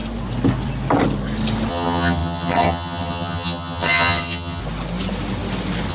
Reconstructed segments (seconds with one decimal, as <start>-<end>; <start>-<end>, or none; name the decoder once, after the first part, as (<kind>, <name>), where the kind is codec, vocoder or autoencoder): 1.7-4.6 (vocoder, HiFi-GAN)